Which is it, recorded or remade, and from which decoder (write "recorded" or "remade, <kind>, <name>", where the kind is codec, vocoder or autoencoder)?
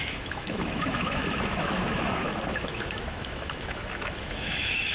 remade, autoencoder, DAC-VAE